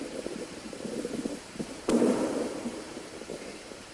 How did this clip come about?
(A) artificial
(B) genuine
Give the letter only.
A